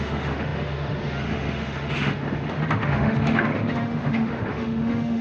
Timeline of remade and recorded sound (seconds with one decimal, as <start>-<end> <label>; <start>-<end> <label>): 0.0-5.2 remade